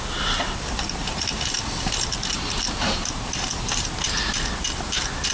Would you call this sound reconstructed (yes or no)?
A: no